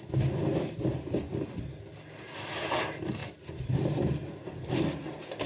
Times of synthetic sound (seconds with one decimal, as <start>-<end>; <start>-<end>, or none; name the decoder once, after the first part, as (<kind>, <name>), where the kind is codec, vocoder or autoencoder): 0.5-1.6 (vocoder, BigVGAN v2); 3.2-4.8